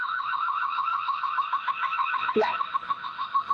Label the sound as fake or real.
fake